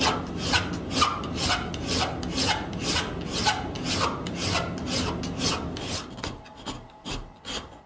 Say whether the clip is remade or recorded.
recorded